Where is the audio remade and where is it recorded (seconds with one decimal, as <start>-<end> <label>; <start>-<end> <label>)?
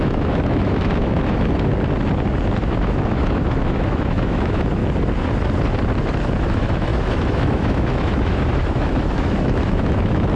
0.0-1.7 remade; 1.7-2.6 recorded; 2.6-4.8 remade; 4.8-6.4 recorded; 6.4-10.3 remade